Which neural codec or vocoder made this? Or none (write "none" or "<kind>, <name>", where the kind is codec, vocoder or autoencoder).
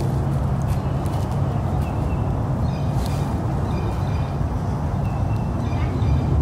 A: none